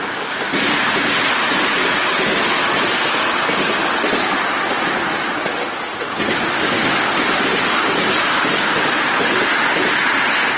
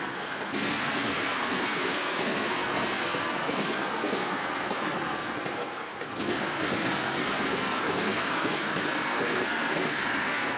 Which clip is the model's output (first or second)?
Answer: second